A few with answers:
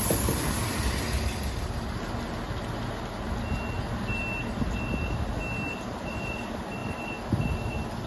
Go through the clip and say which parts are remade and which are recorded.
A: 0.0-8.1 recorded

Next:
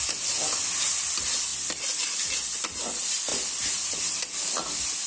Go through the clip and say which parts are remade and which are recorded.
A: 0.0-5.1 recorded

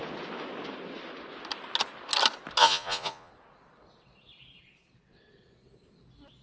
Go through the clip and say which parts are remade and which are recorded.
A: 0.0-2.6 recorded; 2.6-3.3 remade; 3.3-6.4 recorded

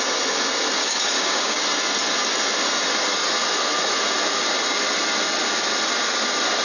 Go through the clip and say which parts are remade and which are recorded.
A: 0.0-0.8 recorded; 0.8-1.6 remade; 1.6-6.6 recorded

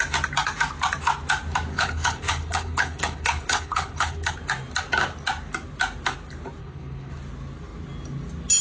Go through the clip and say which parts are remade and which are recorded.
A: 0.0-1.7 recorded; 1.7-4.3 remade; 4.3-6.6 recorded; 6.6-7.1 remade; 7.1-8.6 recorded

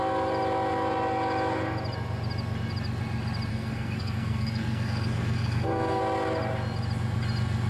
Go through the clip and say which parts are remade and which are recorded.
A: 0.0-3.5 recorded; 3.5-6.0 remade; 6.0-7.7 recorded

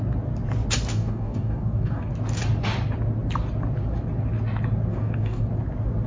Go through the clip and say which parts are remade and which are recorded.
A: 0.0-0.9 recorded; 0.9-2.1 remade; 2.1-4.9 recorded; 4.9-5.5 remade; 5.5-6.1 recorded